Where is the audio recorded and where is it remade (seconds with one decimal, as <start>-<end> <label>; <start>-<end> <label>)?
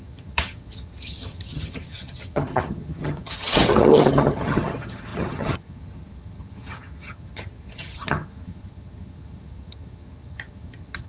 0.0-11.1 remade